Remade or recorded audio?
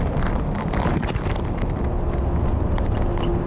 recorded